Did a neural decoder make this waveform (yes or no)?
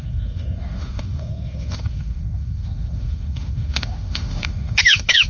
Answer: yes